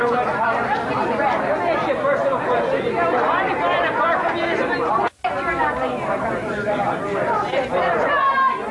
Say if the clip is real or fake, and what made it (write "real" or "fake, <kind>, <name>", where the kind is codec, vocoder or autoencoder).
real